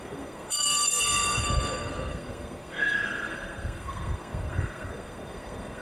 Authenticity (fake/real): fake